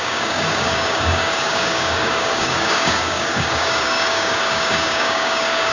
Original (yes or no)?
no